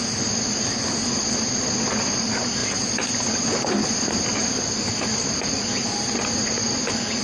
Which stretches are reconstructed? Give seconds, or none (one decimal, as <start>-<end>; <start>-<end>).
none